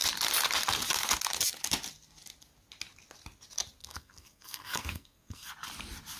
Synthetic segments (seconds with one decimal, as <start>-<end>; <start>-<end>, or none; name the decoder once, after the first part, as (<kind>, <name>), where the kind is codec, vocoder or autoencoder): 3.8-5.5 (codec, SNAC)